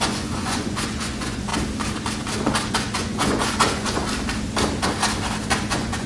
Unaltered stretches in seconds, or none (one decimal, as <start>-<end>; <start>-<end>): 1.5-2.7; 4.0-5.6